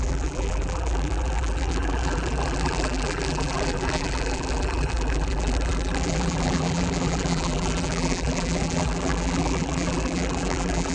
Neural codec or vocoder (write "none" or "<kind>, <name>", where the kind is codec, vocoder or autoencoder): vocoder, BigVGAN v2